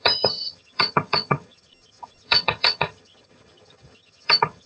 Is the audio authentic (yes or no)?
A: no